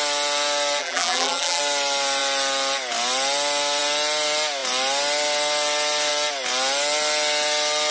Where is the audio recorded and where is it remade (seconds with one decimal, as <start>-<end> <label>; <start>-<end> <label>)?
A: 0.0-0.8 recorded; 0.8-1.6 remade; 1.6-7.9 recorded